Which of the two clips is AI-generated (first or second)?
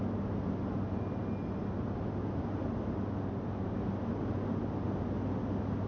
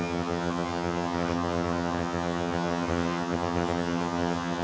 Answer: second